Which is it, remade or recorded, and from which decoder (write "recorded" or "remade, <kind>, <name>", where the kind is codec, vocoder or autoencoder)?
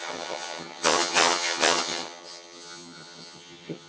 remade, vocoder, HiFi-GAN